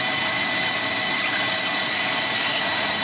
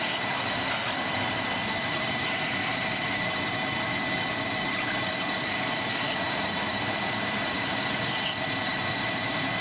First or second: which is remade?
second